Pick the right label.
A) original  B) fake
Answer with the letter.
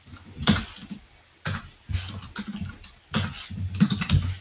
A